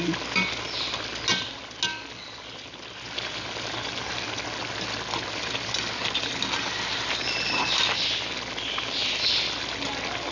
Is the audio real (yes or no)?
yes